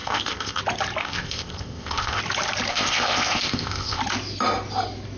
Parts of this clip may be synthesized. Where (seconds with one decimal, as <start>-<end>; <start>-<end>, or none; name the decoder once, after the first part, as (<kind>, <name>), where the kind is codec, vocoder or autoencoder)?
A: 0.0-0.6 (codec, ZipCodec); 1.0-2.2; 2.7-4.0